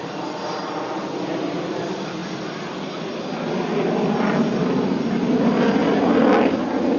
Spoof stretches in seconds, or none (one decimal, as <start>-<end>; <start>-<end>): 0.0-2.2; 4.8-5.8; 6.5-7.0